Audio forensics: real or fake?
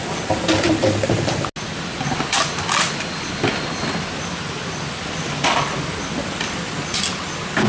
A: real